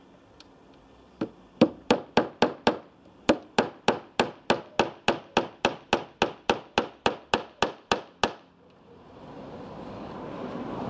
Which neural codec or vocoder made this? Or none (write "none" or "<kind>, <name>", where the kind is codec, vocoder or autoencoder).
none